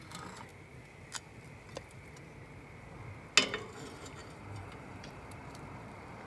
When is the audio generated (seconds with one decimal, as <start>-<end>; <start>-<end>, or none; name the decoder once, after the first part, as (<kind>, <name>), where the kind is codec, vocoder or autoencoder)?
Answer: 4.2-6.3 (vocoder, BigVGAN v2)

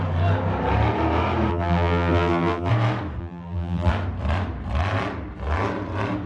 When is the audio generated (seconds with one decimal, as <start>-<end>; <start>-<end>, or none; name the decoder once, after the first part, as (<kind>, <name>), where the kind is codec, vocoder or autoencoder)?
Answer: 1.5-2.7 (vocoder, BigVGAN v2); 3.2-3.9